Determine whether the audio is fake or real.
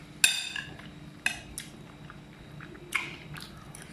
real